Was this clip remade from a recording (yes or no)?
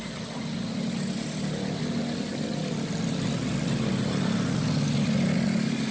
no